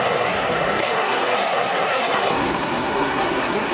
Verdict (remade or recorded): remade